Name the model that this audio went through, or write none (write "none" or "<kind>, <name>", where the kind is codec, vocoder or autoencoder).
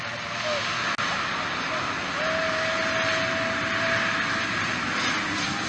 none